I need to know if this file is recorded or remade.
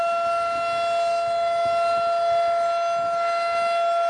recorded